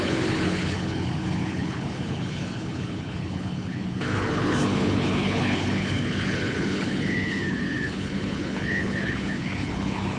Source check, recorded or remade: remade